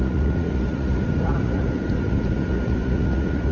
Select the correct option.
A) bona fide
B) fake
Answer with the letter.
B